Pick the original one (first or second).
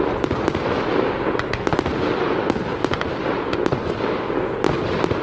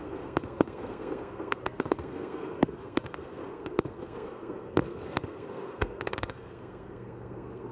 first